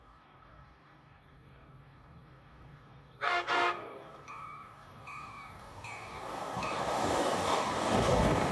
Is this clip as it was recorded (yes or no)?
no